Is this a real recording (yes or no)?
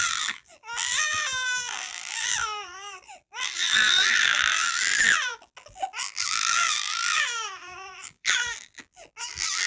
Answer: no